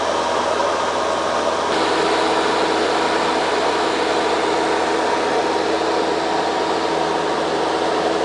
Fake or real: real